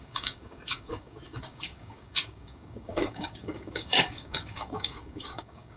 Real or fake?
fake